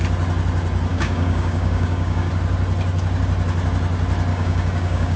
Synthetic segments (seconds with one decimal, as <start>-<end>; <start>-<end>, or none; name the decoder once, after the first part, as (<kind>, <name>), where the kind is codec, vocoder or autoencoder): 0.9-2.3 (codec, DAC); 4.3-5.2